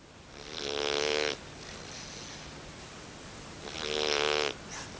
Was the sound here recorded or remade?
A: recorded